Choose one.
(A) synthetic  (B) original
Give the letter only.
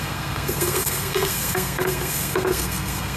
A